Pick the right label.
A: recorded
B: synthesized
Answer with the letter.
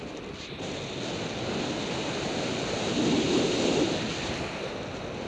A